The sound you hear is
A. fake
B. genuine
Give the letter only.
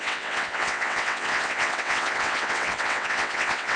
A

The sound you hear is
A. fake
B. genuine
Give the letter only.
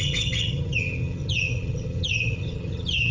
A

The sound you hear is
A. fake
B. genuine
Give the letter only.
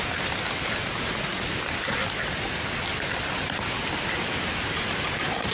B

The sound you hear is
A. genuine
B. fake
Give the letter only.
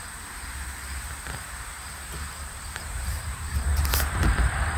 B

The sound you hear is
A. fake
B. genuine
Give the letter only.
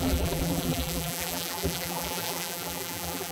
A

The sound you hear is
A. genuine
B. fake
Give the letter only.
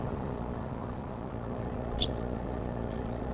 B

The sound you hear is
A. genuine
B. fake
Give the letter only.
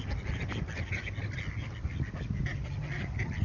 A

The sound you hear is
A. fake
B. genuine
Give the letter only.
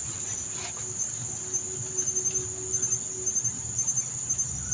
B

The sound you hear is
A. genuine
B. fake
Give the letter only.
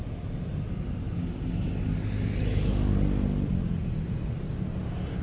A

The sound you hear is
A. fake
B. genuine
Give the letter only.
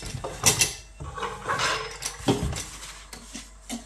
B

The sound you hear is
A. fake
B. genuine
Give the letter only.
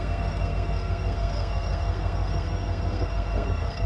A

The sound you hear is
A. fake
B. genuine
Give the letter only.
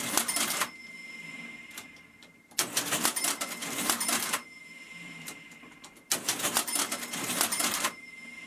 A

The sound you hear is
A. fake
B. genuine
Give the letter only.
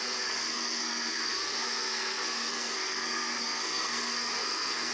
A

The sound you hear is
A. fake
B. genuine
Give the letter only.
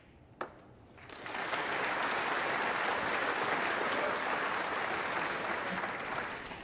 B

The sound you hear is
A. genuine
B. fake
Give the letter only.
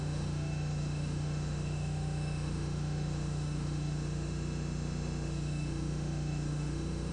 B